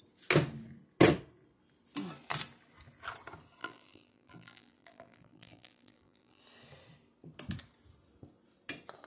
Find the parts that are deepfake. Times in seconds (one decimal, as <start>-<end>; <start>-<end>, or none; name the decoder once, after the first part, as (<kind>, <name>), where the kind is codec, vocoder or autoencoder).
3.6-6.4 (vocoder, BigVGAN v2)